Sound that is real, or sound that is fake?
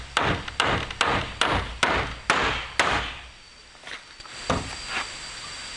real